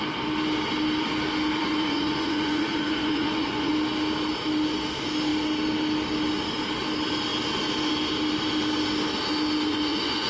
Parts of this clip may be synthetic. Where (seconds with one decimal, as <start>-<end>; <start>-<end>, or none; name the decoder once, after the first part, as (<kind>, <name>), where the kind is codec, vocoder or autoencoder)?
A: 1.6-3.7 (vocoder, Vocos); 9.7-10.3